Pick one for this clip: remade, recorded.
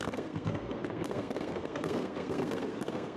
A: remade